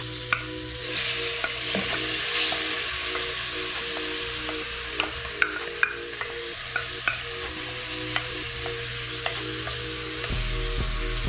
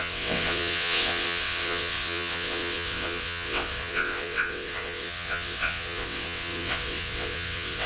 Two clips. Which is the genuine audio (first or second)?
first